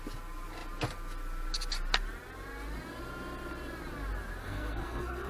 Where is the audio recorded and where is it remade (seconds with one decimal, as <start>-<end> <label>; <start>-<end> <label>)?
0.0-4.4 recorded; 4.4-5.3 remade